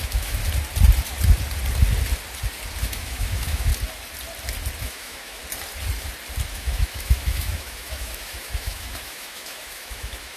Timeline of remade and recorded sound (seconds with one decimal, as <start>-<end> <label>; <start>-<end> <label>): 0.0-0.4 remade; 0.4-2.8 recorded; 2.8-3.7 remade; 3.7-4.8 recorded; 4.8-5.4 remade; 5.4-6.5 recorded; 6.5-10.4 remade